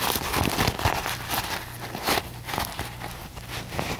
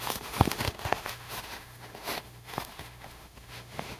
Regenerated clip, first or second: second